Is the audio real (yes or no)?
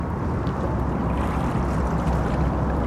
yes